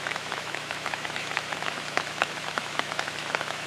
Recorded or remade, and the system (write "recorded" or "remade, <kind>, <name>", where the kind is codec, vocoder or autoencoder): remade, autoencoder, DAC-VAE